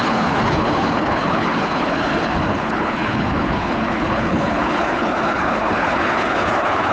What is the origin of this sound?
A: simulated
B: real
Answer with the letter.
A